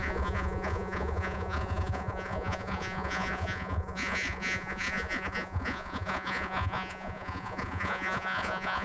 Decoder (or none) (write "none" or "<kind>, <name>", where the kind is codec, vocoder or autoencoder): vocoder, Vocos